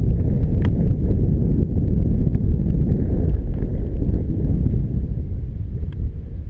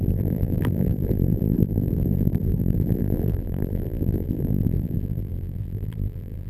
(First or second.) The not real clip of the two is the second